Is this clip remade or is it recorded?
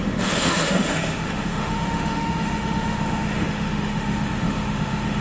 remade